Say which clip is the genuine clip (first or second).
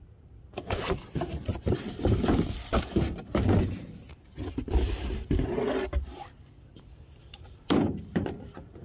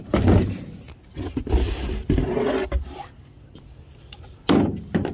second